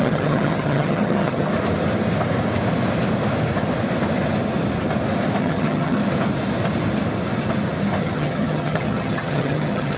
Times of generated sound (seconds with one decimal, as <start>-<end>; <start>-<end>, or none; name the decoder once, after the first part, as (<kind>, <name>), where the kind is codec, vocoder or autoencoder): 0.0-1.5 (vocoder, HiFi-GAN); 5.4-6.0; 8.0-10.0